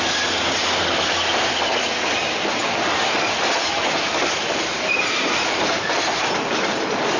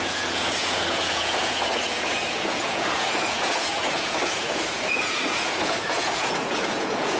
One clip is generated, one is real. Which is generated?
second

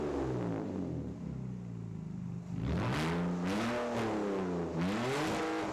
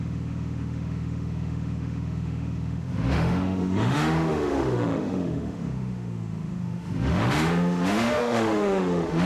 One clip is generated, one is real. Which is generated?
second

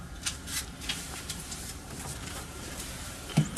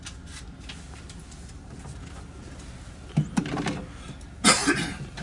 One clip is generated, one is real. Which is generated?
first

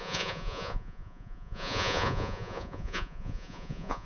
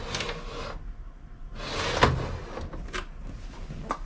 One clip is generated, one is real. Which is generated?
first